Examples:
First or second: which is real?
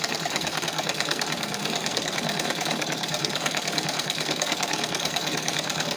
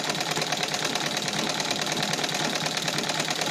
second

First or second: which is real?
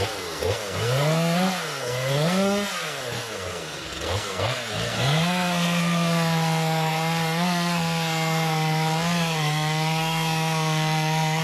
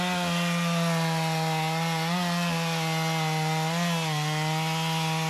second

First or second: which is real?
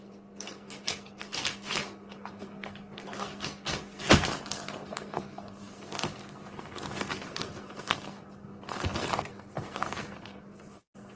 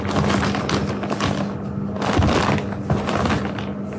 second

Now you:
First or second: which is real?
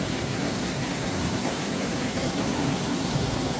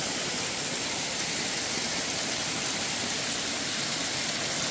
second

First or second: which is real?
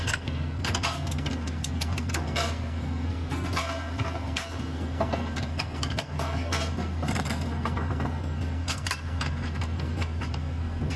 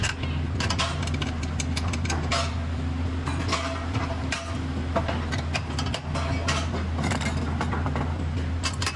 second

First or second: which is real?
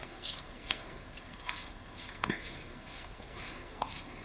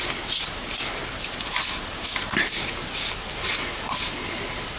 second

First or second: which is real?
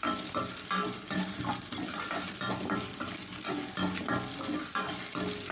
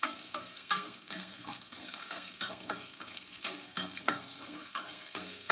first